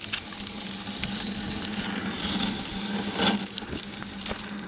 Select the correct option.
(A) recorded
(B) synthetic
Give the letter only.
A